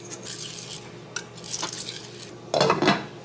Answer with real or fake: real